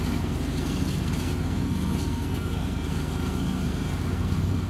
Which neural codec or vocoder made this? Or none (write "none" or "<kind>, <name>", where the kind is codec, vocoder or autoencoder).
codec, SNAC